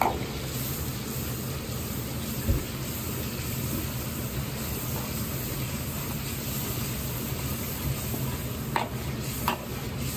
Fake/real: real